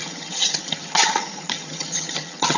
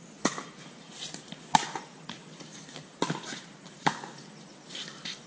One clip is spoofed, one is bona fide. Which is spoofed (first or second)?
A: first